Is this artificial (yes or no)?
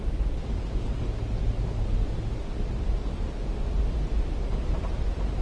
no